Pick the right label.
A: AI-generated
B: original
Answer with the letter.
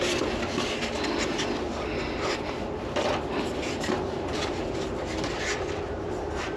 B